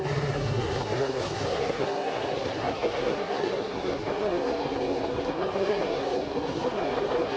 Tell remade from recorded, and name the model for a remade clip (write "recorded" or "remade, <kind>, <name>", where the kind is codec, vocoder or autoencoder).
remade, codec, SNAC